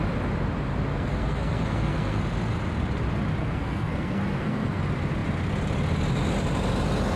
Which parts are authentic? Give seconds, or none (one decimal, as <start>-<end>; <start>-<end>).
0.0-0.9; 2.2-3.4; 4.8-7.2

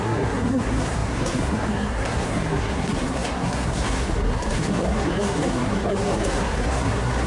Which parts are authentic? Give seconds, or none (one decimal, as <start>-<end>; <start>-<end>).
none

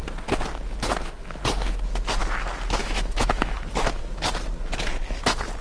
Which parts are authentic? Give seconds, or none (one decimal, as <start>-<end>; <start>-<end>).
0.0-2.8; 3.6-5.6

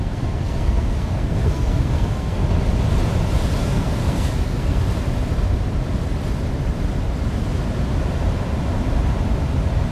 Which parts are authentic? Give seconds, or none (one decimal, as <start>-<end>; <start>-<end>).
2.4-3.6; 4.8-9.9

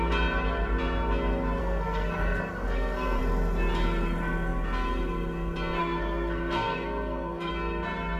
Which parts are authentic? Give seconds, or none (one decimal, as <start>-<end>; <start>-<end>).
0.0-1.6; 3.2-5.8; 7.5-8.2

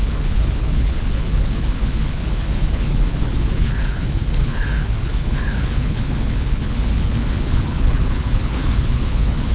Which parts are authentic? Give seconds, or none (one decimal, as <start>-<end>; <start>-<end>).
none

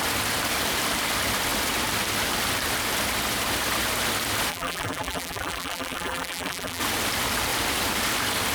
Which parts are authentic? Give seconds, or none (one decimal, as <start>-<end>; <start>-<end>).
0.0-4.5; 6.8-8.5